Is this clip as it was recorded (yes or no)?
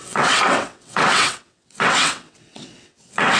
no